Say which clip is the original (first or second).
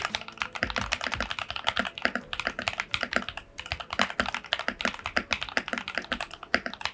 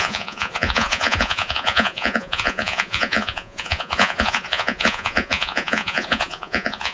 first